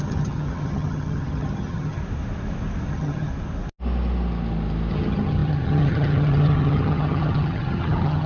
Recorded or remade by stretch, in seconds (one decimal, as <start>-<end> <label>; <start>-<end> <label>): 0.0-2.0 remade; 2.0-2.9 recorded; 2.9-3.3 remade; 3.3-4.9 recorded; 4.9-8.3 remade